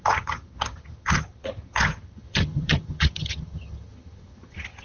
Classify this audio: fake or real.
fake